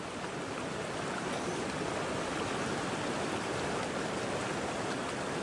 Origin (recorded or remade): recorded